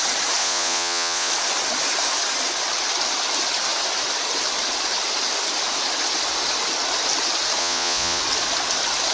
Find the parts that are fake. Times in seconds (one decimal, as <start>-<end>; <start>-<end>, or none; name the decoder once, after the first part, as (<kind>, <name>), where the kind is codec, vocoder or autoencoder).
0.4-1.3 (vocoder, Vocos); 7.6-8.2

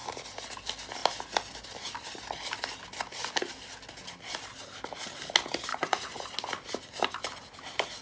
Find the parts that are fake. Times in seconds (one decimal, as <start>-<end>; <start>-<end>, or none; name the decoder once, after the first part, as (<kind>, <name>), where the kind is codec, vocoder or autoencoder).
5.7-6.2 (vocoder, Vocos)